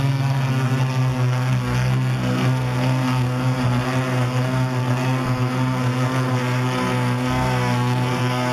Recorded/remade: remade